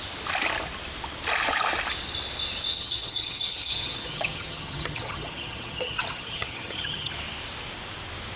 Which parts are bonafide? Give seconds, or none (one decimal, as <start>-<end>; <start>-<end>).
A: 0.0-2.7; 7.1-8.4